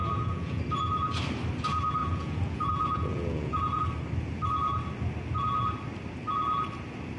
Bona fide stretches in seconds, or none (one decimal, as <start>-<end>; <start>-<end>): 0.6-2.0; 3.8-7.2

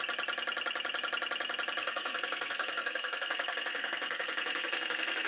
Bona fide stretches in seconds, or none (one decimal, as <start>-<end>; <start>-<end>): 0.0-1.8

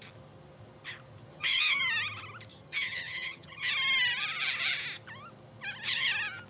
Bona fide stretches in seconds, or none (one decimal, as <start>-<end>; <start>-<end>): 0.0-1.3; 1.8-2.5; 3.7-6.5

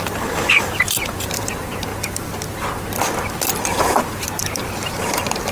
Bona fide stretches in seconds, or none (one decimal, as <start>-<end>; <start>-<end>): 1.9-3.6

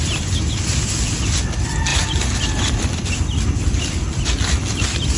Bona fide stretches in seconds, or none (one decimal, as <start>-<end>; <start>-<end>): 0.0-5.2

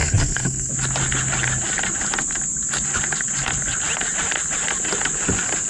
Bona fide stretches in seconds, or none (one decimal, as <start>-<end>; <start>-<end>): 0.7-5.7

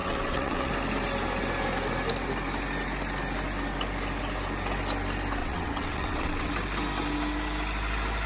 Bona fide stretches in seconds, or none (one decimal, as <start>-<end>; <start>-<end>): 0.7-5.4; 6.5-8.3